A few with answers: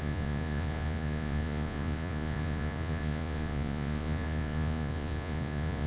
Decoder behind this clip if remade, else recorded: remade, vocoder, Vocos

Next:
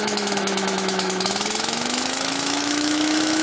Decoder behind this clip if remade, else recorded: remade, autoencoder, DAC-VAE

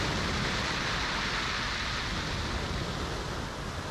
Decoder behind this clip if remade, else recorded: recorded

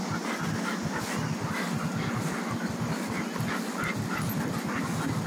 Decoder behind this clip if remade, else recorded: recorded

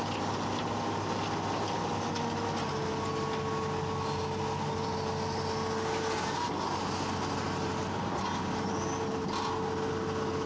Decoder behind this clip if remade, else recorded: recorded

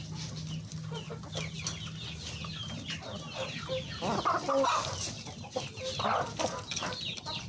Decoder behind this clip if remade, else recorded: recorded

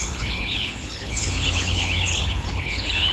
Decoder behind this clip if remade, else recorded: remade, codec, HILCodec